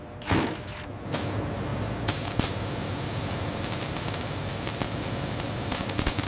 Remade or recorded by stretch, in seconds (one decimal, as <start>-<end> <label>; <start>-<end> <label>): 0.0-6.3 recorded